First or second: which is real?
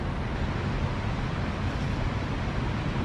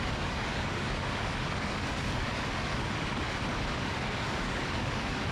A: first